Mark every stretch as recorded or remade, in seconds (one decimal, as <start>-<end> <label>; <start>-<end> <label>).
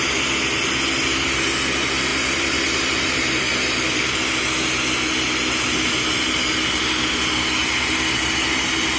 0.0-2.1 recorded; 2.1-4.0 remade; 4.0-9.0 recorded